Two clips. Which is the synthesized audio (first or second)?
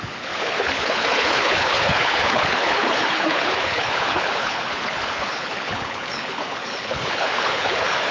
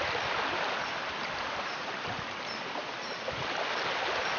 first